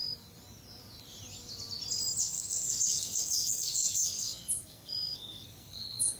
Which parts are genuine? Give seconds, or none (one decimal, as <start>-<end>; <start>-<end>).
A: 0.0-2.2